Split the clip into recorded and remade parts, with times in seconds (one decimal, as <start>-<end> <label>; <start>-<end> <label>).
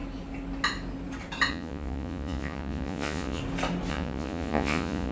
0.0-1.5 recorded; 1.5-3.4 remade; 3.4-3.9 recorded; 3.9-5.1 remade